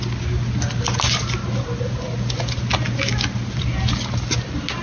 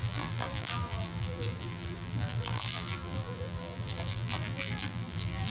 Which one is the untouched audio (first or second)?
first